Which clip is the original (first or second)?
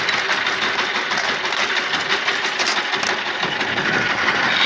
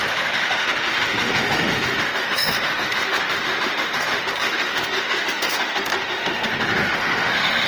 first